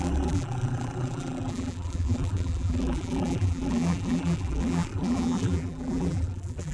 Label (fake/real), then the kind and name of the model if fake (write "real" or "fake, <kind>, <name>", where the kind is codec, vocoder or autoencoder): fake, vocoder, BigVGAN v2